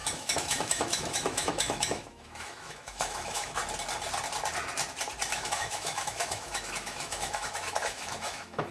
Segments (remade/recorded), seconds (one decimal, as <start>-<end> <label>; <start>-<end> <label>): 0.0-3.6 remade; 3.6-5.3 recorded; 5.3-8.7 remade